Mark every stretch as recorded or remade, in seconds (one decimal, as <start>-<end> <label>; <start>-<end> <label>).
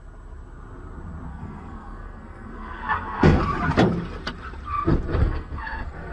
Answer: 0.0-1.3 recorded; 1.3-3.4 remade; 3.4-5.2 recorded; 5.2-6.1 remade